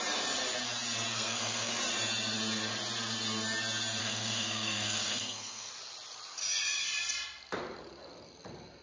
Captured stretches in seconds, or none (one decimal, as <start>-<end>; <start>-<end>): 0.0-1.1; 1.7-4.0; 5.7-8.8